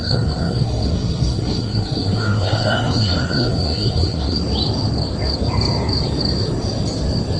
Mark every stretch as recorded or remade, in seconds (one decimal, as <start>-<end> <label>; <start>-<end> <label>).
0.0-4.4 remade; 4.4-7.4 recorded